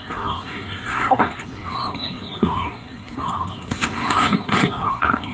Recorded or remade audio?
remade